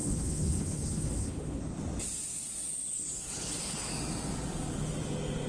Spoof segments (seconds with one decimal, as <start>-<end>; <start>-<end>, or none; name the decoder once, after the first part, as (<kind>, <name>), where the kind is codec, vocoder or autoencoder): 0.0-1.6 (codec, HILCodec); 2.9-3.9